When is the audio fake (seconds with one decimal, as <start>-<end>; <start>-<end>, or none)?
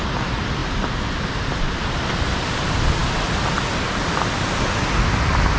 none